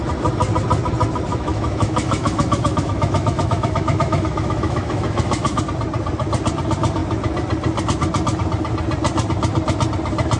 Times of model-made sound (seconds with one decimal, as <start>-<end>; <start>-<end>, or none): 1.3-5.6